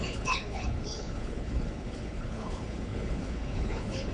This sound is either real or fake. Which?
fake